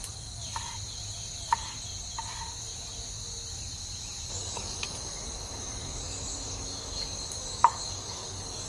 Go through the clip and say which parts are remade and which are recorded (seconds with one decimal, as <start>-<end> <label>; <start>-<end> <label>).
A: 0.0-4.4 recorded; 4.4-8.7 remade